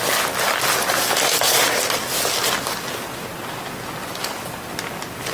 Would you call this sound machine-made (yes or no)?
no